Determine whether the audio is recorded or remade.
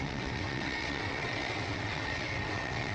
remade